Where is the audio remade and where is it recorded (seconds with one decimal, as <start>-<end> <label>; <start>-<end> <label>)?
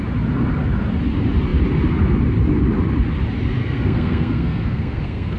0.0-3.6 recorded; 3.6-5.4 remade